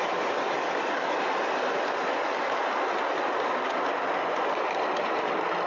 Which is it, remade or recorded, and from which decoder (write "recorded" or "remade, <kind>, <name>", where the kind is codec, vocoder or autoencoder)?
recorded